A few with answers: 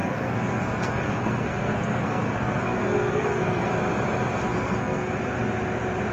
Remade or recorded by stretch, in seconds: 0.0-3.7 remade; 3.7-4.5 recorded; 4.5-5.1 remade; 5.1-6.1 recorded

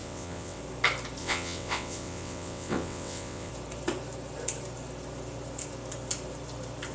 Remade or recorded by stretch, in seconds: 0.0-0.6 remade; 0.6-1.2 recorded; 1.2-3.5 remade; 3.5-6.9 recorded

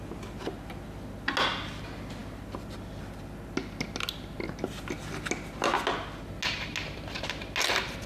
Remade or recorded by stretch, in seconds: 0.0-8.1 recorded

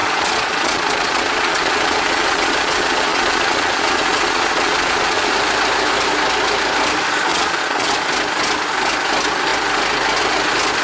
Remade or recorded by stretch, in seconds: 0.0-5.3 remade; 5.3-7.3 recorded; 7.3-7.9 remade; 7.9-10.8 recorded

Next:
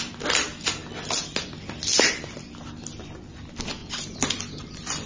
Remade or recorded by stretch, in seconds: 0.0-5.1 recorded

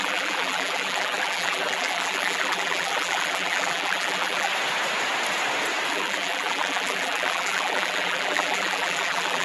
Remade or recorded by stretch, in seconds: 0.0-4.5 remade; 4.5-5.9 recorded; 5.9-9.4 remade

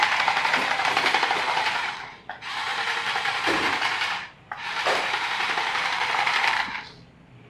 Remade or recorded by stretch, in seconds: 0.0-2.3 remade; 2.3-2.7 recorded; 2.7-6.7 remade; 6.7-7.5 recorded

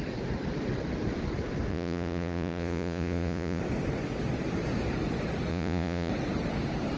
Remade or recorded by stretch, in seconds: 0.0-1.7 recorded; 1.7-3.6 remade; 3.6-5.5 recorded; 5.5-6.1 remade; 6.1-7.0 recorded